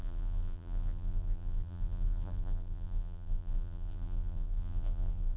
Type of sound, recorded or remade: remade